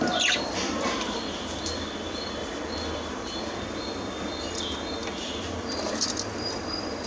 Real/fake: fake